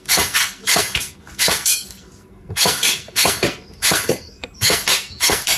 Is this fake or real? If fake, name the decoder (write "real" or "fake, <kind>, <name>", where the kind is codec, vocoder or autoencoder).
fake, codec, SNAC